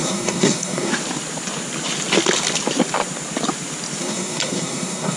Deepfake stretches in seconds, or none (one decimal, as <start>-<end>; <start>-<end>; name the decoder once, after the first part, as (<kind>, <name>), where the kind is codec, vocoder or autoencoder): 0.0-0.9 (codec, SNAC); 4.0-5.2